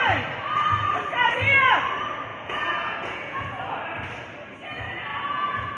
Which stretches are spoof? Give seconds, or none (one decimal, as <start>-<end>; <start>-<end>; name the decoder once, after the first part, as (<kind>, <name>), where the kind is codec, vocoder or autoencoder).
2.3-3.6 (vocoder, Vocos); 5.1-5.8